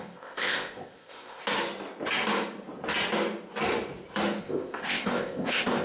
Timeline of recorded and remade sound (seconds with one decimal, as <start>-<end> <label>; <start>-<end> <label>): 0.0-1.4 remade; 1.4-4.4 recorded; 4.4-5.8 remade